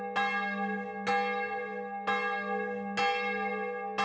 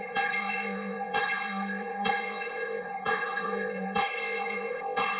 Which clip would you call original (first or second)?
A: first